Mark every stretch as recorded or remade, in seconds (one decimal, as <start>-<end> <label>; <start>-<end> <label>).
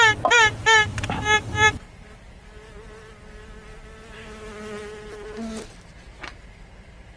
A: 0.0-0.9 recorded; 0.9-1.8 remade; 1.8-7.2 recorded